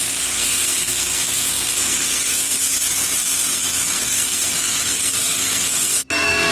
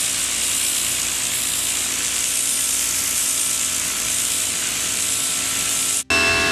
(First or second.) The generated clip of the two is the first